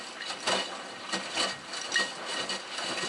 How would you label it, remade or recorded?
recorded